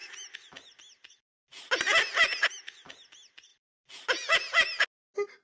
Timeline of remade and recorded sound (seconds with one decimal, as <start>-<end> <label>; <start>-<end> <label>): 0.0-5.4 recorded